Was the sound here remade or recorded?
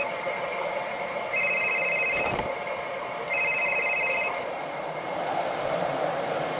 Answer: remade